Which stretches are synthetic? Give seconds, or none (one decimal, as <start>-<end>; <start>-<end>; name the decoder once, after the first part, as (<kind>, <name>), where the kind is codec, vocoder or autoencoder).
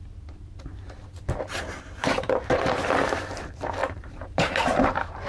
2.0-2.7 (vocoder, BigVGAN v2); 3.8-5.3